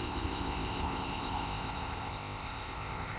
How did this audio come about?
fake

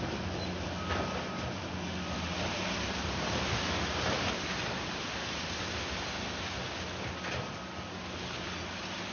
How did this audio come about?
real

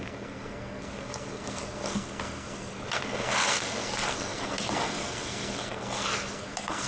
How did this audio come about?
fake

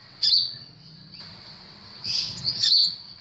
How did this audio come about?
fake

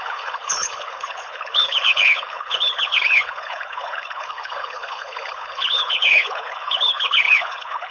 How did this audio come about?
fake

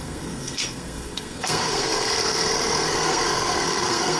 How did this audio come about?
fake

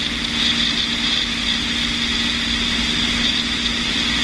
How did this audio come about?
real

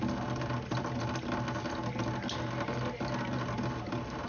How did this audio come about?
real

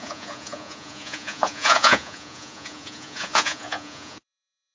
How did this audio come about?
fake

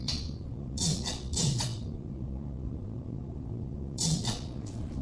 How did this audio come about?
fake